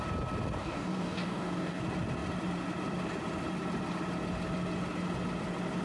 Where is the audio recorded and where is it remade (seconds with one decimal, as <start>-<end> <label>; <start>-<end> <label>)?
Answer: 0.0-0.6 recorded; 0.6-1.8 remade; 1.8-5.8 recorded